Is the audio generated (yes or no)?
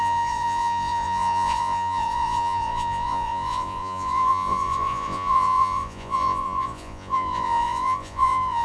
yes